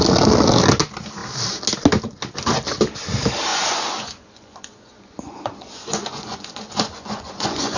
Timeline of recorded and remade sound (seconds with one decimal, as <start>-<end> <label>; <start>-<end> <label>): 0.0-3.5 recorded; 3.5-7.8 remade